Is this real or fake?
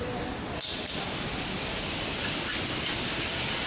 real